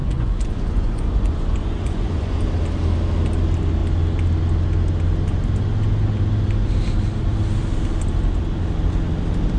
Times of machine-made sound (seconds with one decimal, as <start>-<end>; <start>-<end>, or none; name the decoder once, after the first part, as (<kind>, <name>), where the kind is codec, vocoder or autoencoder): 0.0-2.4 (vocoder, Vocos)

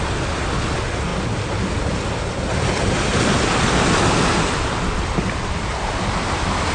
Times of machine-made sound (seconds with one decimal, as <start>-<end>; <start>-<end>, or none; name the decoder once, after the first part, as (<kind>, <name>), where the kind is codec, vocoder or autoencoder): none